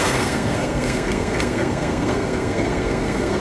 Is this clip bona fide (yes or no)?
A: no